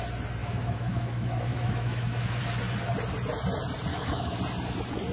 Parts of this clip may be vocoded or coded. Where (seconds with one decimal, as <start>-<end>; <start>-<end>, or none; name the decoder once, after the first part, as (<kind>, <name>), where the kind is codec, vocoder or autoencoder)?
0.4-2.4 (autoencoder, DAC-VAE); 3.9-4.4